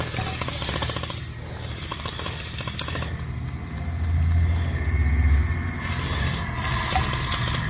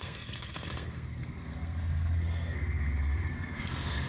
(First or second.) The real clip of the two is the first